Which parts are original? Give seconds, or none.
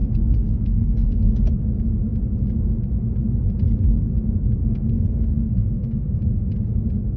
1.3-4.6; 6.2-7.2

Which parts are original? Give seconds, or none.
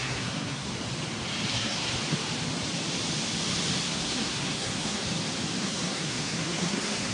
0.7-1.5; 1.9-3.8; 5.0-5.6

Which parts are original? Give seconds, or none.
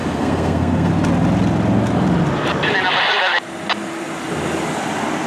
0.9-5.3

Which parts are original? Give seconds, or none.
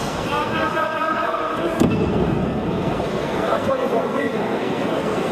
none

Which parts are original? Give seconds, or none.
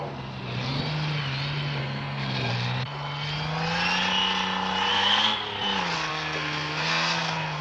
0.0-1.8; 2.5-4.9; 5.4-6.1